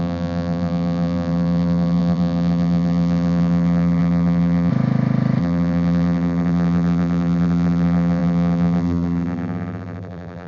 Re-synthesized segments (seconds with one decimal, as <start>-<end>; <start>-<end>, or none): 0.0-4.7; 5.4-10.5